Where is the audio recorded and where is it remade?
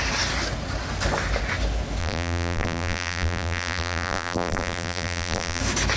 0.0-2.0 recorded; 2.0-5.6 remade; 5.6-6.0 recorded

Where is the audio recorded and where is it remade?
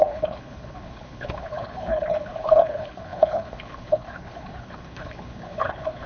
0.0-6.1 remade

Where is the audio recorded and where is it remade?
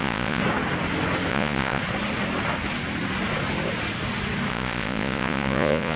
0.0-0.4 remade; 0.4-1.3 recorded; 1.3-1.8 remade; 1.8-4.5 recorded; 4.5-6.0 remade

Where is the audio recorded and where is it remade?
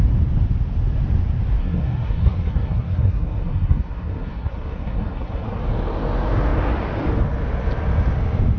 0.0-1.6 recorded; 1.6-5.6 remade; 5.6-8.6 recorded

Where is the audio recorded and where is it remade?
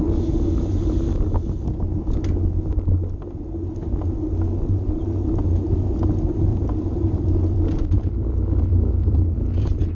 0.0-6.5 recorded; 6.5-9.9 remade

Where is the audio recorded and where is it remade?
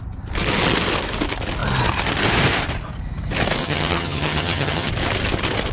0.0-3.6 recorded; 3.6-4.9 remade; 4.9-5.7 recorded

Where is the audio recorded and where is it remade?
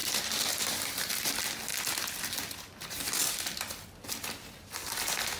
0.0-5.4 recorded